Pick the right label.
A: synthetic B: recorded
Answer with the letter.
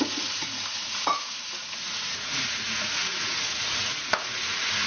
A